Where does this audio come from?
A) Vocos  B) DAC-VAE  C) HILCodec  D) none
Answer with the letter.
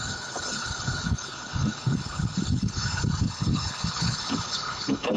C